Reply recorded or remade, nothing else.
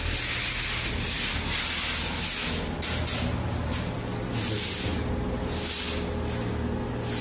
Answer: recorded